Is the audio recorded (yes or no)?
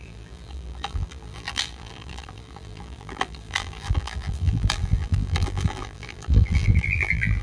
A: no